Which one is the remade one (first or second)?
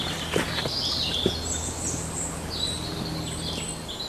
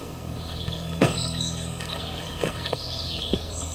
second